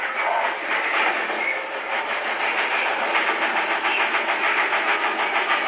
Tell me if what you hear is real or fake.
real